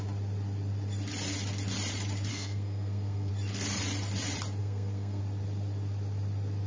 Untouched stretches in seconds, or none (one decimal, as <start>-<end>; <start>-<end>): 0.0-2.3; 3.3-4.6; 5.2-6.7